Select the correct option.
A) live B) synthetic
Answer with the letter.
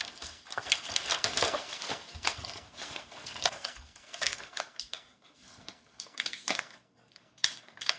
B